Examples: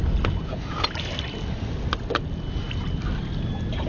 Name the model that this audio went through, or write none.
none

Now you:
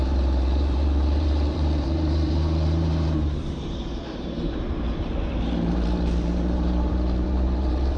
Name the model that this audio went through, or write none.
vocoder, BigVGAN v2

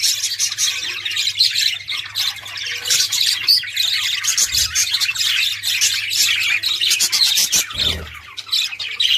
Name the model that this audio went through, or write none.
none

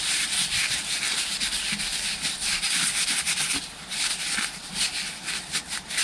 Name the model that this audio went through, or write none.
vocoder, BigVGAN v2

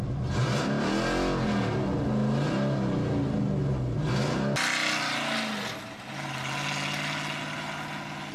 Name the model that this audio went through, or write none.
none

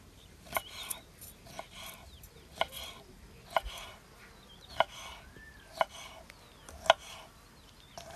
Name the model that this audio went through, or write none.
none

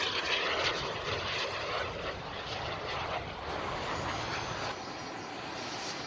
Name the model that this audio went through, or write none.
vocoder, BigVGAN v2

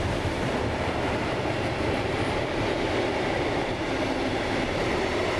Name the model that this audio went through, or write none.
vocoder, BigVGAN v2